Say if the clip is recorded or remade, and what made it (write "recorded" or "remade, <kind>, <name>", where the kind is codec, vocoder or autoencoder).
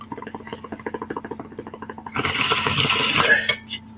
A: recorded